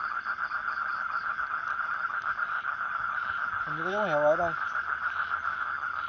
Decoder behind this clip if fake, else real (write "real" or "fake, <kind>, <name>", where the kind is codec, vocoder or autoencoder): real